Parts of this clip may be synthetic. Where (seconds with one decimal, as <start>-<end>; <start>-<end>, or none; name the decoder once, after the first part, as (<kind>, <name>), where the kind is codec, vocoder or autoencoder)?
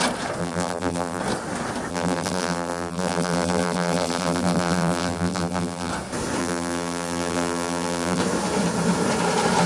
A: 0.4-1.2 (vocoder, BigVGAN v2); 1.9-5.9; 6.4-8.2